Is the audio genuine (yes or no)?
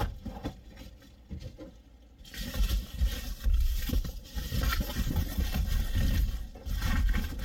yes